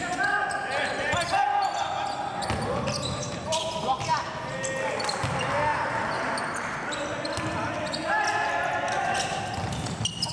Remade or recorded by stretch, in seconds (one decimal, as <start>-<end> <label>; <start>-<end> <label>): 0.0-10.3 recorded